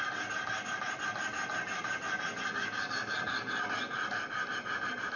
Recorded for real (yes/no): yes